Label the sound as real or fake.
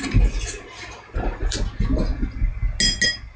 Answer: real